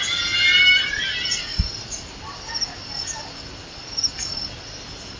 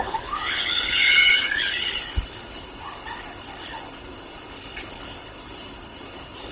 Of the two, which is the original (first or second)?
first